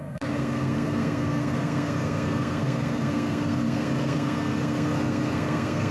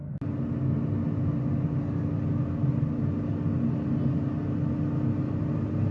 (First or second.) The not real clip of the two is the first